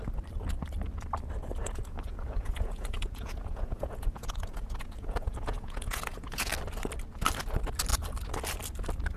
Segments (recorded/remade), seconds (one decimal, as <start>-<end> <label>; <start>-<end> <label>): 0.0-1.6 recorded; 1.6-6.5 remade; 6.5-9.2 recorded